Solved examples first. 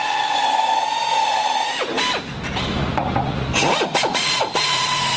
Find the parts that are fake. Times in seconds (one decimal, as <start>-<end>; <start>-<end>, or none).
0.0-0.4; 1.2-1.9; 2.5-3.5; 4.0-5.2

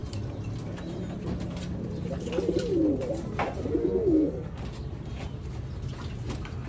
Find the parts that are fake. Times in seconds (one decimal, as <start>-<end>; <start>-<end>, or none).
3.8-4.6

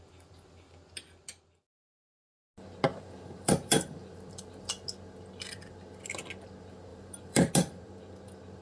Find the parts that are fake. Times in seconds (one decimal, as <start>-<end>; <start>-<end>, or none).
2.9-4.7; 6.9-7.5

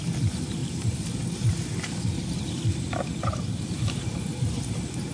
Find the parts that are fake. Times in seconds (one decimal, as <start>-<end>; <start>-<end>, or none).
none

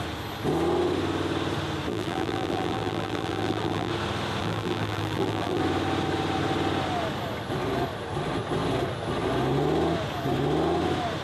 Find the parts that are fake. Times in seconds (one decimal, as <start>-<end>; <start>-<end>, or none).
1.9-3.9; 4.4-5.6

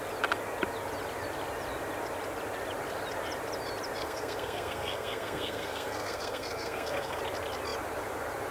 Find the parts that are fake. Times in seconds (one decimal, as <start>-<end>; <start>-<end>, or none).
4.0-7.2

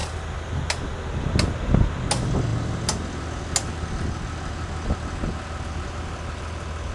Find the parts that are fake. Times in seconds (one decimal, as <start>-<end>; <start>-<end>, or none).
none

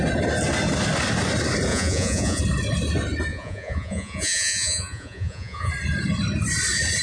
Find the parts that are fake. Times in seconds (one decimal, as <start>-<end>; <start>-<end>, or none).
1.7-2.4; 3.3-5.7